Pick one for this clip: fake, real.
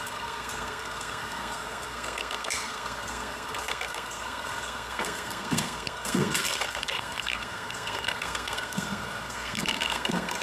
fake